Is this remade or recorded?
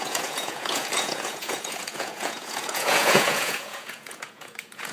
remade